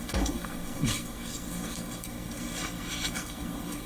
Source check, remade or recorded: remade